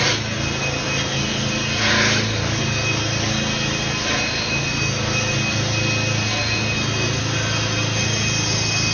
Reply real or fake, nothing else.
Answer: real